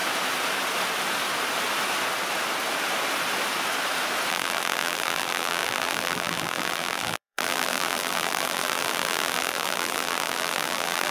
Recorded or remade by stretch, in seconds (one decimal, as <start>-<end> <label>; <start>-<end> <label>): 0.0-4.3 recorded; 4.3-11.1 remade